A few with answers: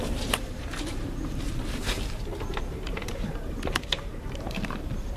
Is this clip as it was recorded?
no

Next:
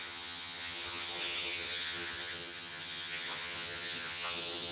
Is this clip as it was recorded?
no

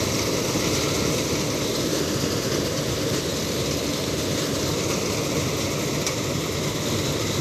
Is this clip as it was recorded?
yes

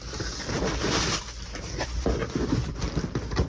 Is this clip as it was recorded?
yes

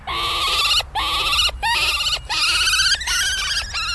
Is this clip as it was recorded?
yes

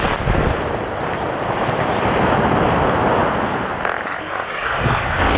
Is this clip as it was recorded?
yes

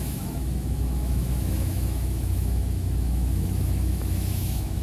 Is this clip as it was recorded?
no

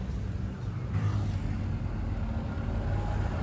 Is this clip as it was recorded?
yes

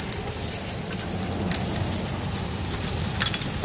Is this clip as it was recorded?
yes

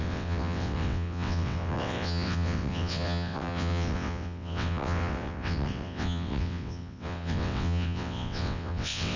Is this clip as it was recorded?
no